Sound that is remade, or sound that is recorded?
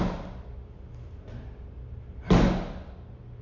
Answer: recorded